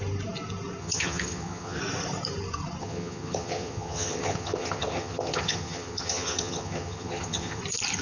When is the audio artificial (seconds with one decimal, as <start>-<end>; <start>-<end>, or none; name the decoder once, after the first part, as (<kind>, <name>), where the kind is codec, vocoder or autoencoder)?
0.8-1.8 (vocoder, HiFi-GAN); 2.8-7.6